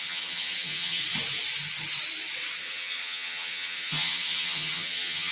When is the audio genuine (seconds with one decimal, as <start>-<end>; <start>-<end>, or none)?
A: 1.0-2.6